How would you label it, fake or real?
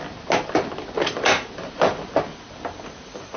real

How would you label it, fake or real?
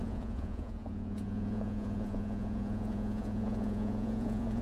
fake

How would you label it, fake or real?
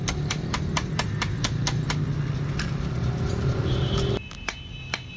real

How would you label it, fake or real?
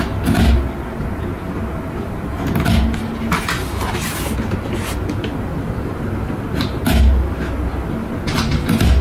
real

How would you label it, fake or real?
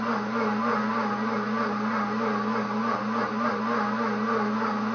real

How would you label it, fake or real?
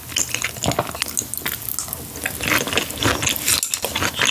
real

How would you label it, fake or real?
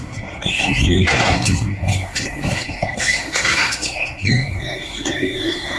fake